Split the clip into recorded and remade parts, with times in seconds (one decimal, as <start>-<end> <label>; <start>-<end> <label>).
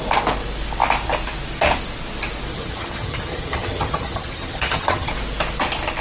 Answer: 0.0-2.5 recorded; 2.5-5.1 remade; 5.1-6.0 recorded